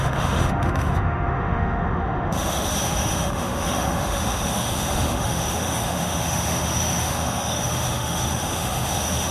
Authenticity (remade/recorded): remade